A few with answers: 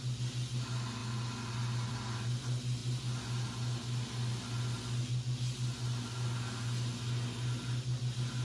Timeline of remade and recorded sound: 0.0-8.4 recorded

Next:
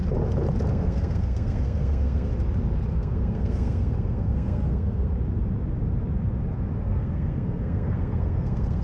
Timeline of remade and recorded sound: 0.0-0.7 recorded; 0.7-2.3 remade; 2.3-2.9 recorded; 2.9-5.1 remade; 5.1-6.8 recorded; 6.8-8.8 remade

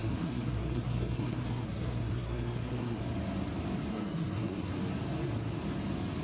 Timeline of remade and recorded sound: 0.0-3.0 remade; 3.0-3.9 recorded; 3.9-4.7 remade; 4.7-6.2 recorded

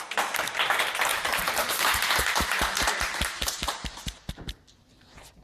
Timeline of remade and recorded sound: 0.0-1.1 recorded; 1.1-4.3 remade; 4.3-5.4 recorded